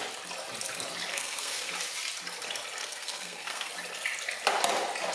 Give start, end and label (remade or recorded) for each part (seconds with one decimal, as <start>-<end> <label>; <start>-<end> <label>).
0.0-1.1 recorded; 1.1-1.7 remade; 1.7-2.8 recorded; 2.8-3.7 remade; 3.7-5.1 recorded